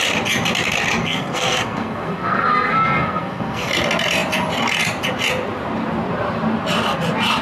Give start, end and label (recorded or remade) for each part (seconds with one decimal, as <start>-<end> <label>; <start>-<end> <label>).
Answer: 0.0-1.0 recorded; 1.0-3.7 remade; 3.7-7.4 recorded

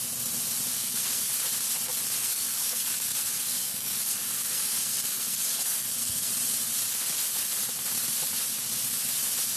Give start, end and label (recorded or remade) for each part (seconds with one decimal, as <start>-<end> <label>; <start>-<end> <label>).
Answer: 0.0-0.7 recorded; 0.7-1.3 remade; 1.3-2.2 recorded; 2.2-6.3 remade; 6.3-9.6 recorded

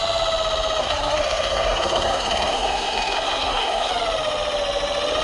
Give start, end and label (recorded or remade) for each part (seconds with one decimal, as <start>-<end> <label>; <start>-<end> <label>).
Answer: 0.0-0.8 recorded; 0.8-3.9 remade; 3.9-5.2 recorded

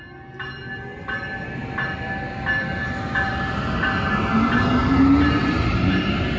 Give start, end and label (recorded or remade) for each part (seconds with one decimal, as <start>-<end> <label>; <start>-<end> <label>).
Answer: 0.0-6.4 recorded

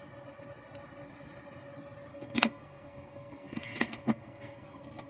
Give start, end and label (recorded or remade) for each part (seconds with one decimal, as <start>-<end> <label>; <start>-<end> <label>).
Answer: 0.0-2.1 recorded; 2.1-5.1 remade